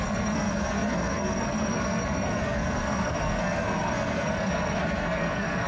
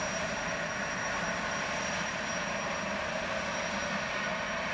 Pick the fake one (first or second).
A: first